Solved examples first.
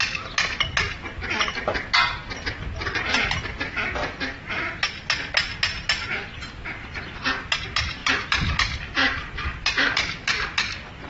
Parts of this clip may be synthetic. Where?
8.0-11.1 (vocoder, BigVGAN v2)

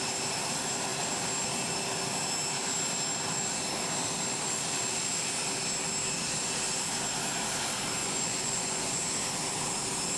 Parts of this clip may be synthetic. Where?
8.0-9.0 (vocoder, Vocos)